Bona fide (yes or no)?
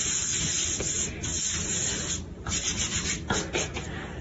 yes